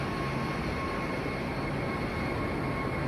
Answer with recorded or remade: recorded